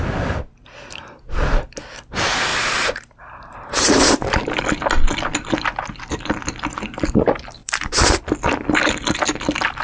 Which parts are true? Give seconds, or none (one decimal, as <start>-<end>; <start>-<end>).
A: 0.0-2.5; 4.6-7.6; 8.2-9.8